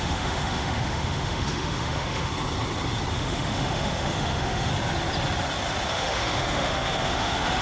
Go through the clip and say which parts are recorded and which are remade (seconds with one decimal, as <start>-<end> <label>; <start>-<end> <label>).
0.0-2.3 remade; 2.3-3.1 recorded; 3.1-4.7 remade; 4.7-5.9 recorded; 5.9-7.6 remade